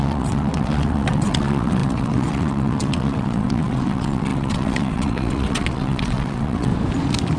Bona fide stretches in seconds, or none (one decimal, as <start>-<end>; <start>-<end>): 6.7-7.4